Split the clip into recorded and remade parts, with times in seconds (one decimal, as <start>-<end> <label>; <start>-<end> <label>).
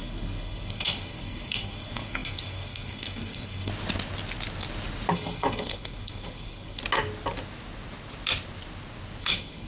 0.0-3.7 remade; 3.7-5.1 recorded; 5.1-6.8 remade; 6.8-9.2 recorded; 9.2-9.7 remade